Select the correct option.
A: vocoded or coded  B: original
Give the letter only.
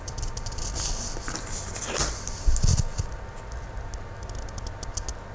B